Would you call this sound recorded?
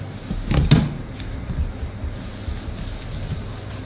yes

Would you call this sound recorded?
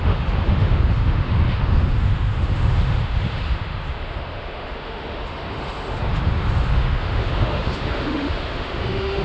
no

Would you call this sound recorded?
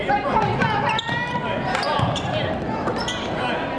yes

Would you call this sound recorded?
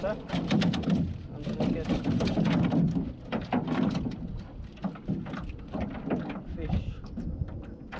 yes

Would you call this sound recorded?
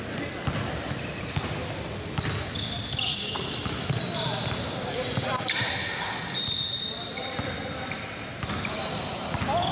yes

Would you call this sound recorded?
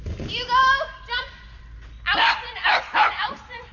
yes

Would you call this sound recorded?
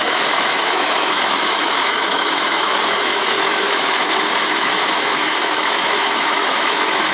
no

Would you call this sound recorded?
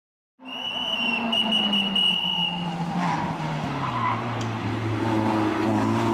yes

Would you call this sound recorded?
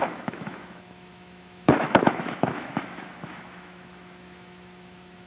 no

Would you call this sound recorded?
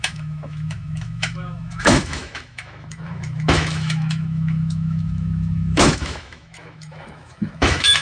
no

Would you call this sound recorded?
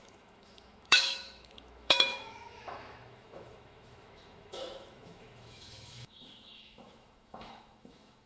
no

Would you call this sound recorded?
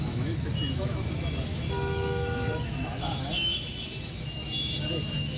no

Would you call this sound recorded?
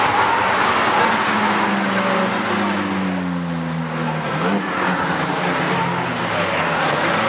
yes